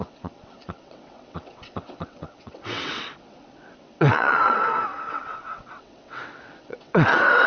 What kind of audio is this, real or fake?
fake